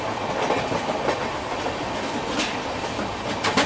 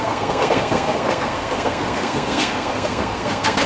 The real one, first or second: first